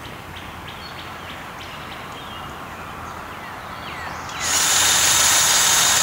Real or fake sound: real